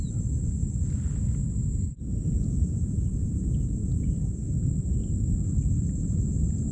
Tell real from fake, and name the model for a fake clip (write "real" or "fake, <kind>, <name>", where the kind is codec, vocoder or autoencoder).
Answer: real